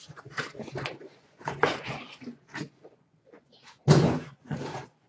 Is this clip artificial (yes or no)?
yes